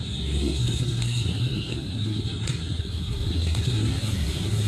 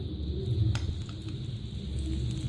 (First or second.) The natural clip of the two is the second